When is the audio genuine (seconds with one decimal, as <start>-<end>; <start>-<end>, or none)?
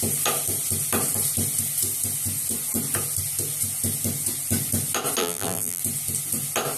0.0-5.2; 5.8-6.8